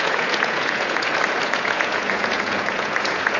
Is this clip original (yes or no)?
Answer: no